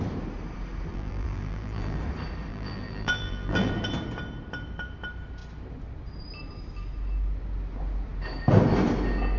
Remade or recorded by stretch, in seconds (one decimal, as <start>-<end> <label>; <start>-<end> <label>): 0.0-0.9 recorded; 0.9-2.0 remade; 2.0-2.5 recorded; 2.5-3.7 remade; 3.7-9.4 recorded